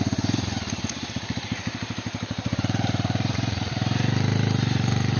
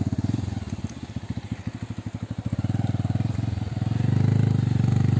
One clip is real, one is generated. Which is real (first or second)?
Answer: second